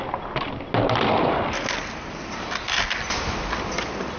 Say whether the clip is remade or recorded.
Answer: recorded